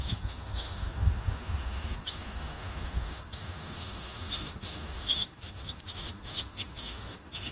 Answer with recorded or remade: remade